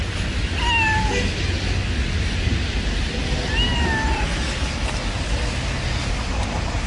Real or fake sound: real